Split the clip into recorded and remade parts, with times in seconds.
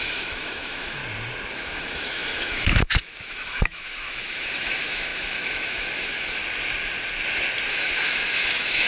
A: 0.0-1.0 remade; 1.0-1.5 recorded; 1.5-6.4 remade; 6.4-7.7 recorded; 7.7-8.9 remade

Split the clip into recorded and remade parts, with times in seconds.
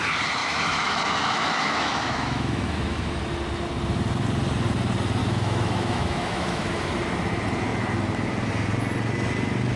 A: 0.0-0.4 recorded; 0.4-3.2 remade; 3.2-5.2 recorded; 5.2-6.9 remade; 6.9-9.8 recorded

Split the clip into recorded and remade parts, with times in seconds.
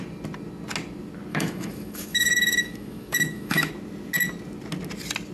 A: 0.0-1.3 recorded; 1.3-3.7 remade; 3.7-5.3 recorded